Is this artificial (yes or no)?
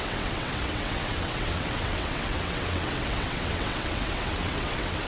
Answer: yes